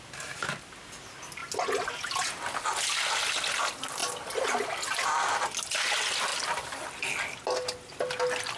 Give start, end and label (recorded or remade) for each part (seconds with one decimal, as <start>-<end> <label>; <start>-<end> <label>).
0.0-8.6 recorded